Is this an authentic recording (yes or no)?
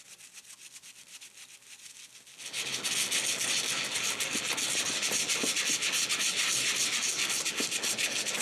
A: yes